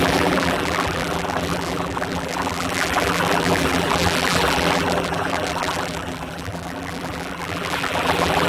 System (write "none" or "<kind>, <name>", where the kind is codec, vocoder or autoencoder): vocoder, BigVGAN v2